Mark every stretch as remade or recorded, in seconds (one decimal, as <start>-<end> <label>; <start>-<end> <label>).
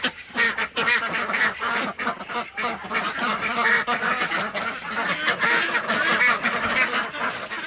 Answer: 0.0-7.7 recorded